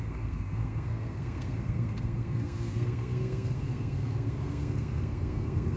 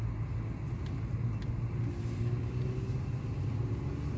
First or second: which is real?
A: second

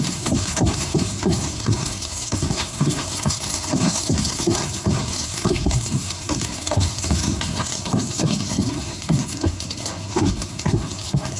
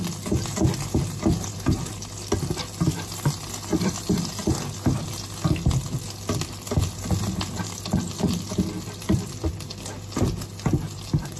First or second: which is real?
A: second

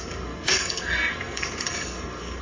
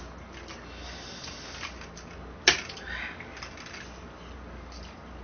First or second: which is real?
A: second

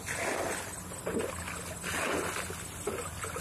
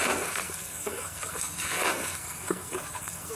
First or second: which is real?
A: first